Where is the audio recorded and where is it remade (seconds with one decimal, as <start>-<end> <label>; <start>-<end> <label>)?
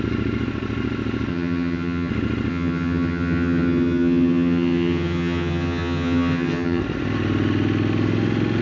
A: 0.0-1.3 recorded; 1.3-2.1 remade; 2.1-2.5 recorded; 2.5-6.8 remade; 6.8-8.6 recorded